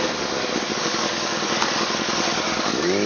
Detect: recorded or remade remade